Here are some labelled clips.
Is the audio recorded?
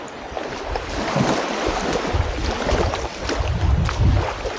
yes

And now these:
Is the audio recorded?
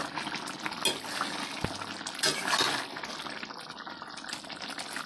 yes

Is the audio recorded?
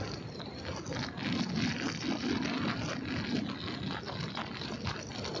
yes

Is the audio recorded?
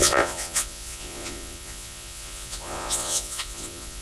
no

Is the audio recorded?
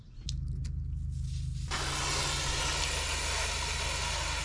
yes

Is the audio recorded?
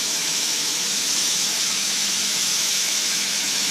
no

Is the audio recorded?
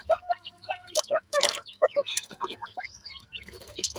no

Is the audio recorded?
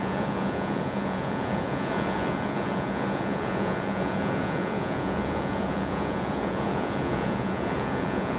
no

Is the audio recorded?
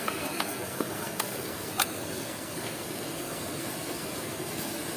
no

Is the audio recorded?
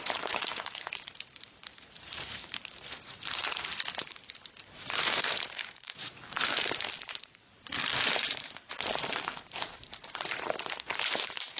no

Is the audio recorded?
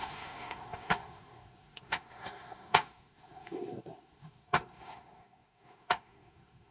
no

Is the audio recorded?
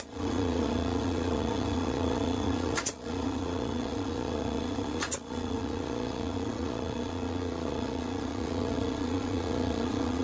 no